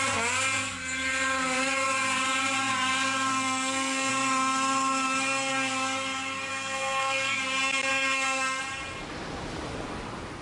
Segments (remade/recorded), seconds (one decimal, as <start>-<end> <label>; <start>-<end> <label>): 0.0-3.3 recorded; 3.3-4.1 remade; 4.1-6.5 recorded; 6.5-7.4 remade; 7.4-7.9 recorded; 7.9-8.6 remade; 8.6-10.4 recorded